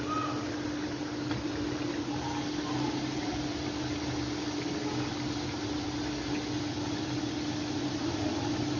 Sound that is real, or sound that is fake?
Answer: real